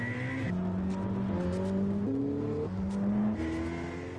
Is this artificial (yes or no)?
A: no